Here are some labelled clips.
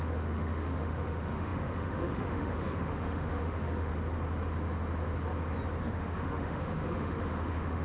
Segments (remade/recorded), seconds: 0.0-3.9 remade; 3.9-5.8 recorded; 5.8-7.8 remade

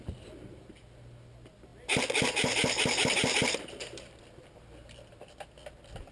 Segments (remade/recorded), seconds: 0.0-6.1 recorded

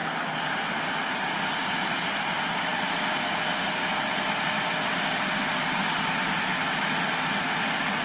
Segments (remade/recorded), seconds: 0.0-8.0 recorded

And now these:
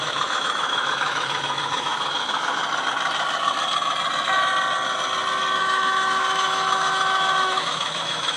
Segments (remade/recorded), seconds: 0.0-2.6 remade; 2.6-5.6 recorded; 5.6-8.4 remade